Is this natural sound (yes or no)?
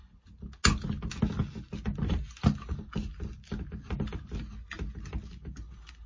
yes